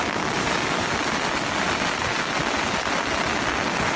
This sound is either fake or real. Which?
real